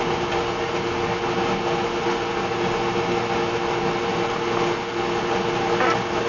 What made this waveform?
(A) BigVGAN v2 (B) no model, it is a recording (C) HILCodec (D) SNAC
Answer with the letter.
B